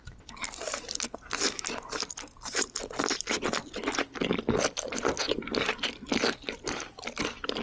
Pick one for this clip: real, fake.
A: real